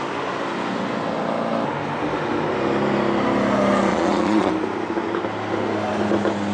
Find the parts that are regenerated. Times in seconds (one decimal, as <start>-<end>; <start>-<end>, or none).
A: 3.9-4.5